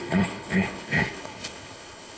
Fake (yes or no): yes